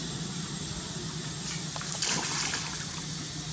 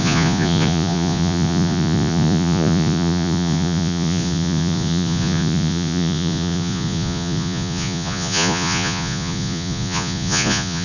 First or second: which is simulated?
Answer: second